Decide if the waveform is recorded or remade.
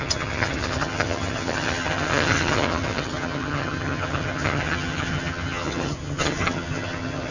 remade